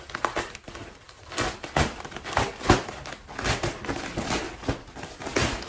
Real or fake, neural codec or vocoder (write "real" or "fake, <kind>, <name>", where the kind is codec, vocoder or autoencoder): real